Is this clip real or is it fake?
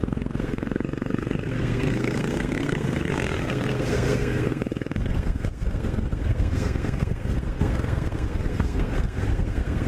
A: fake